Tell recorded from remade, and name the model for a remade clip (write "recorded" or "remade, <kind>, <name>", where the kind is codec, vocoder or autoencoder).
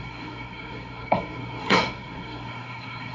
remade, codec, SNAC